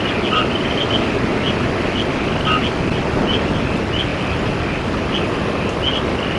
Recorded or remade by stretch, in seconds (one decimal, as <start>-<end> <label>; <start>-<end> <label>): 0.0-6.4 recorded